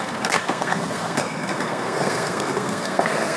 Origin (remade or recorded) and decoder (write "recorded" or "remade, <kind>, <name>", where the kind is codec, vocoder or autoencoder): remade, codec, SNAC